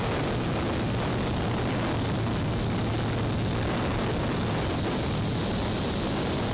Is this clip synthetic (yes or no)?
no